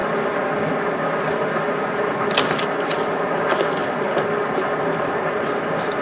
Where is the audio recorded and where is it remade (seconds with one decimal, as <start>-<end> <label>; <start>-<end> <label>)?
0.0-6.0 recorded